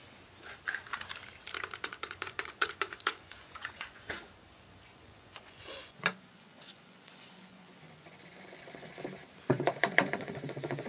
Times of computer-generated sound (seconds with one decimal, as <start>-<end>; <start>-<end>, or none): 1.8-8.9; 9.5-10.9